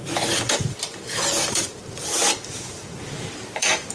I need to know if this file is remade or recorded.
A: remade